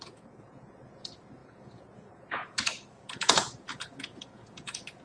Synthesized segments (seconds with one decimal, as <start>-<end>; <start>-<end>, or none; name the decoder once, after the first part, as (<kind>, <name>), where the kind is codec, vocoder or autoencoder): 0.0-5.0 (vocoder, Vocos)